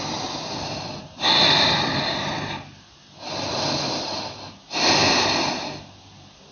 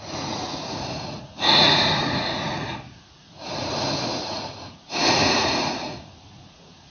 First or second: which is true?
first